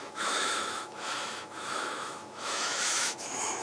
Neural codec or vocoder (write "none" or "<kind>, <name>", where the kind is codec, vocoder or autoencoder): autoencoder, DAC-VAE